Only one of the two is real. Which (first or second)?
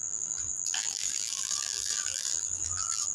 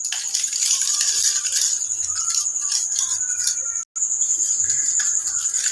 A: second